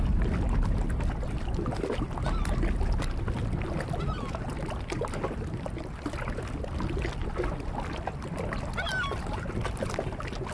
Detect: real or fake real